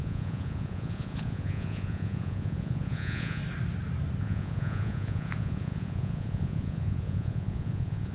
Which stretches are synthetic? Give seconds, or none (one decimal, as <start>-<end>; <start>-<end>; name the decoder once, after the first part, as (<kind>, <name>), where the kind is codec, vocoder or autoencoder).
0.0-3.4 (vocoder, Vocos); 4.2-8.1